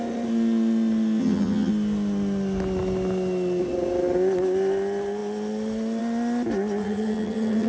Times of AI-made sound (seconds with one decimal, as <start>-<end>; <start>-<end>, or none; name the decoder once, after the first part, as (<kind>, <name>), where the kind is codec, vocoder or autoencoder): 1.2-1.7 (vocoder, HiFi-GAN); 6.8-7.7